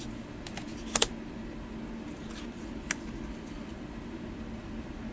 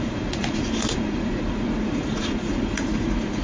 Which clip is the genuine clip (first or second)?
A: first